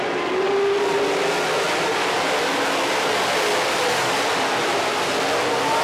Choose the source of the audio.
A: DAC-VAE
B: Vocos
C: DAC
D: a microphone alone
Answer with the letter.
D